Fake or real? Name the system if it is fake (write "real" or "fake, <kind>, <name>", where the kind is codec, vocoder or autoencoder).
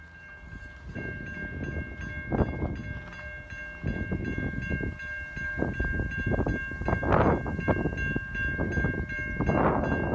real